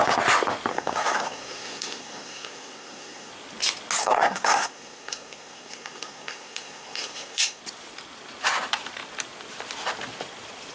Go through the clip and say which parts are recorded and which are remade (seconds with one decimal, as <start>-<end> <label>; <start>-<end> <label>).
0.0-0.7 recorded; 0.7-3.3 remade; 3.3-4.0 recorded; 4.0-7.6 remade; 7.6-10.7 recorded